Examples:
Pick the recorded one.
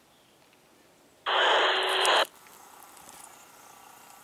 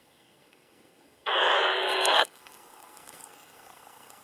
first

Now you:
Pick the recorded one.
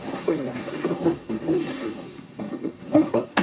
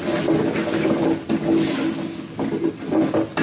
second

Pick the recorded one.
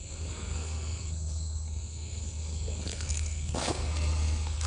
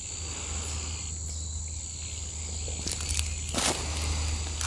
second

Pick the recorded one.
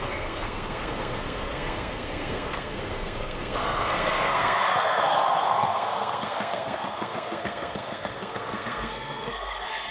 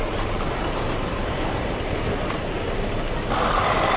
second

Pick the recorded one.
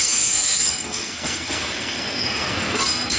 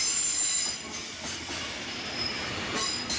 second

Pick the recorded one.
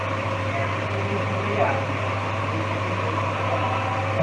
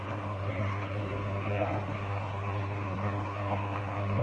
first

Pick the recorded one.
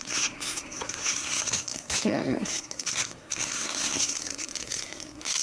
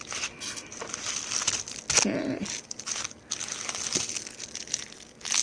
second